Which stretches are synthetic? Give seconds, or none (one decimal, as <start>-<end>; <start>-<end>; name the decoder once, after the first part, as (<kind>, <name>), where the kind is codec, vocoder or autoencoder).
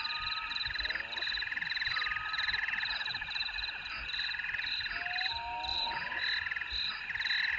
5.7-6.2 (vocoder, Vocos)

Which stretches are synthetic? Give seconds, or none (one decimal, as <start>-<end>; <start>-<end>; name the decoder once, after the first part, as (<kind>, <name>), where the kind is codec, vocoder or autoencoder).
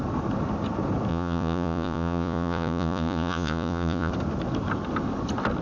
1.1-4.1 (vocoder, Vocos)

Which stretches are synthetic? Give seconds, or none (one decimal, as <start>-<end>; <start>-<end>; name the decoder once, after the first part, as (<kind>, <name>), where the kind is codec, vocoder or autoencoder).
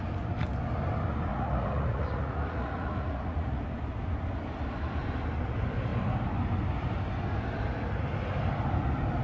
1.3-3.6 (vocoder, Vocos)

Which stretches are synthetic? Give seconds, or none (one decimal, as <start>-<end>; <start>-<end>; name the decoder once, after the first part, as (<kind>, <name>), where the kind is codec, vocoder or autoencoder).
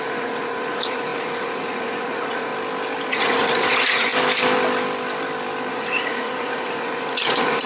0.0-2.5 (vocoder, Vocos); 3.1-4.1; 5.7-7.7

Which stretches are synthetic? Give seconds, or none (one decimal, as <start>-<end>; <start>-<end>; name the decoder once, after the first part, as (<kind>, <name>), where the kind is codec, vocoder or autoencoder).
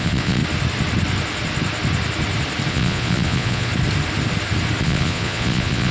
0.0-0.4 (vocoder, Vocos); 2.7-3.7; 4.8-5.9